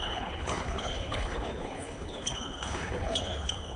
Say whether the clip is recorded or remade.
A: remade